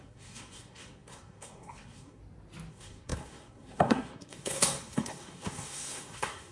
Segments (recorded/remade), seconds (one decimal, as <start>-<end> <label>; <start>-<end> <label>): 0.0-2.2 remade; 2.2-2.7 recorded; 2.7-6.5 remade